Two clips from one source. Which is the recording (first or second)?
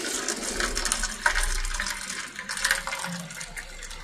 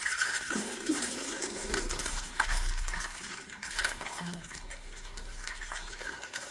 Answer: first